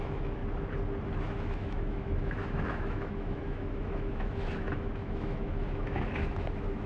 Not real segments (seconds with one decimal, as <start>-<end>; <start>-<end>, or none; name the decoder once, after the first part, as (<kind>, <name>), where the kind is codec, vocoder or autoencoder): 0.0-0.4 (autoencoder, DAC-VAE); 1.2-6.9